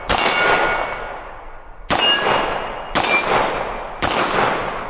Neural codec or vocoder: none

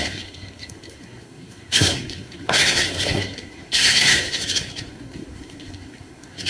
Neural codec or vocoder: codec, SNAC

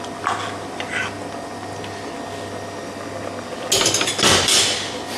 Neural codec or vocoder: none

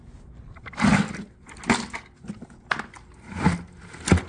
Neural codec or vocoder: none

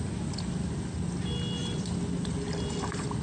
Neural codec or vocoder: none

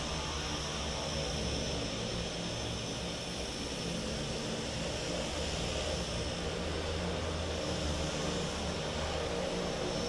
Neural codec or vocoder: none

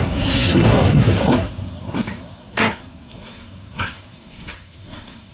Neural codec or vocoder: codec, SNAC